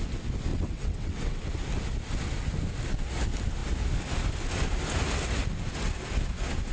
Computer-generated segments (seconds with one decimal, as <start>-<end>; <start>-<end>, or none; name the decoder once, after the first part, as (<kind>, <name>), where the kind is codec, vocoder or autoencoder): 0.5-1.4 (vocoder, WaveNeXt)